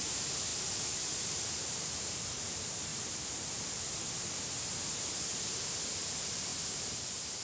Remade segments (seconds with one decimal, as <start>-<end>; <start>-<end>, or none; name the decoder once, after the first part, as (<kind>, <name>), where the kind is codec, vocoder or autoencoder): 0.0-2.9 (vocoder, BigVGAN v2); 6.0-7.4